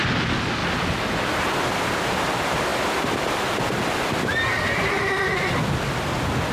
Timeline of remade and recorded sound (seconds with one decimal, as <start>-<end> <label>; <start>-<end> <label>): 0.0-2.7 recorded; 2.7-5.1 remade; 5.1-6.5 recorded